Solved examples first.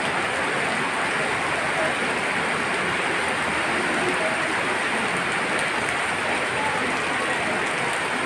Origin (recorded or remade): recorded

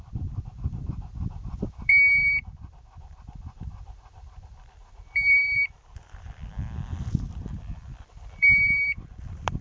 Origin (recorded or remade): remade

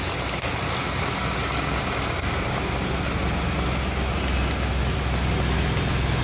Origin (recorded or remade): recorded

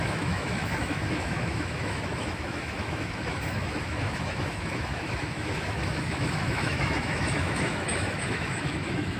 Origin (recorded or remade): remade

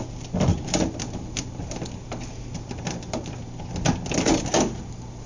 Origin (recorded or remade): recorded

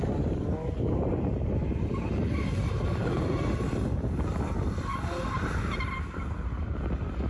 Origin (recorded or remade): recorded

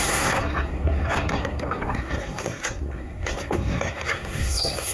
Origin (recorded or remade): remade